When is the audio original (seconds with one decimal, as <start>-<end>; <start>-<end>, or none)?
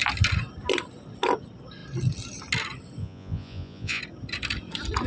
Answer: 0.0-3.0; 4.0-5.1